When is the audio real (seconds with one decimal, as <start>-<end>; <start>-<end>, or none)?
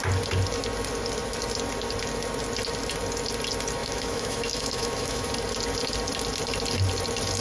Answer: 0.0-3.8; 5.3-7.4